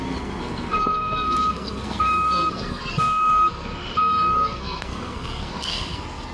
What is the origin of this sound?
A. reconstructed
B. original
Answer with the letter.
A